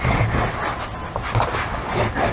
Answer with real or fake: real